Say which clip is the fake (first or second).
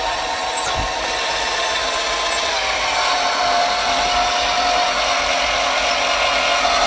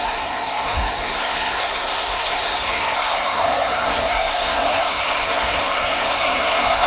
second